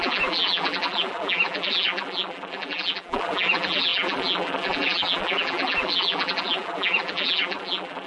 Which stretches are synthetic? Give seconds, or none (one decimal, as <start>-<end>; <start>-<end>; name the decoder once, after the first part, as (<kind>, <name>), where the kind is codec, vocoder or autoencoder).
0.0-8.1 (vocoder, BigVGAN v2)